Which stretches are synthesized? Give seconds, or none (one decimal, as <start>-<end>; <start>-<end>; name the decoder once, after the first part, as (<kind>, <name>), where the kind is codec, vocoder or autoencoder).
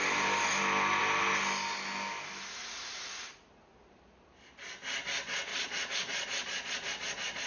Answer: 5.5-7.5 (vocoder, Vocos)